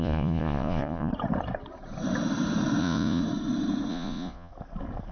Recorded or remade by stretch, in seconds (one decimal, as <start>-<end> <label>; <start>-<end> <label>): 0.0-1.1 remade; 1.1-2.8 recorded; 2.8-3.2 remade; 3.2-3.9 recorded; 3.9-4.5 remade; 4.5-5.1 recorded